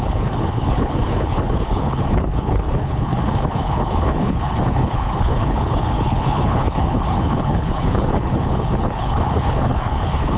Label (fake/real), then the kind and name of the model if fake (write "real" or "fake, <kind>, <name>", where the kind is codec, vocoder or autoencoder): fake, codec, HILCodec